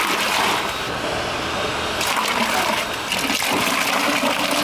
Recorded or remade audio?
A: recorded